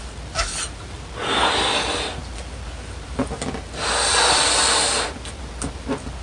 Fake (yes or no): no